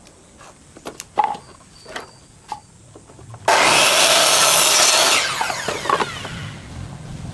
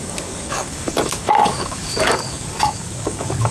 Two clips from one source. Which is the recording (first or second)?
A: first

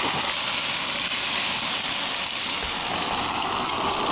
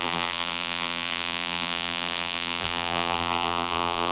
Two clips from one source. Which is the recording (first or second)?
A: first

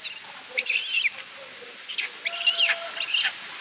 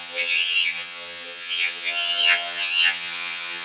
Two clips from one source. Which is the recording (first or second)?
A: first